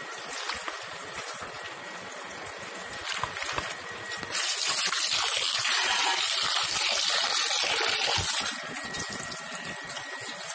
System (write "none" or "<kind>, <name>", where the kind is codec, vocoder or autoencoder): none